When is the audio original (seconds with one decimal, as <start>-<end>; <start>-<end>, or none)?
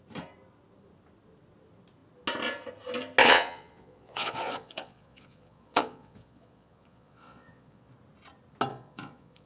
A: 0.0-3.2; 7.9-8.7